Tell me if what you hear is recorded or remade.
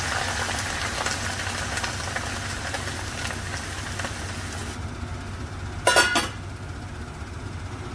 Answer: recorded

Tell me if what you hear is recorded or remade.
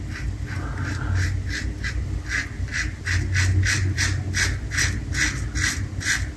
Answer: recorded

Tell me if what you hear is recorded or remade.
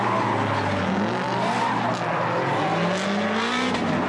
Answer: recorded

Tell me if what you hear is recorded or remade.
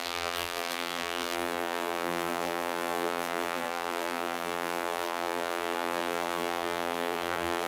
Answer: remade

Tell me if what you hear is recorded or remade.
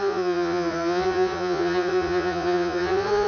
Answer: remade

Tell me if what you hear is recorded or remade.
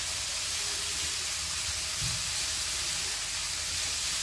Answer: recorded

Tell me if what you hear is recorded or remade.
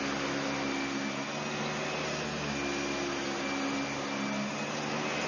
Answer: recorded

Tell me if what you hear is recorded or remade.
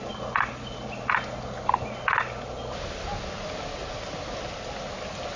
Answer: recorded